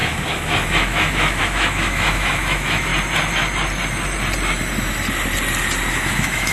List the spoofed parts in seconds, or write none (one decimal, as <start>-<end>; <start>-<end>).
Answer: 0.0-2.9; 5.9-6.5